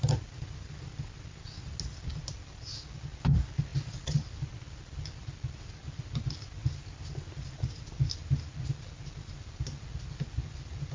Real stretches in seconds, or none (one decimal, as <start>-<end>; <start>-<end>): 0.0-10.9